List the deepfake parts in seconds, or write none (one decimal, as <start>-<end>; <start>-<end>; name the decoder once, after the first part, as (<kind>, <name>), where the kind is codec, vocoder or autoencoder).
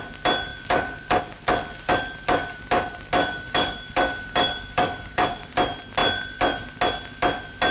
3.2-5.5 (codec, DAC)